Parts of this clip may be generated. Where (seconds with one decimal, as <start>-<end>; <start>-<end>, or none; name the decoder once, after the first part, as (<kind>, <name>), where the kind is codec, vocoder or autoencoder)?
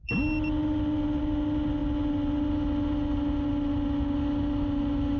none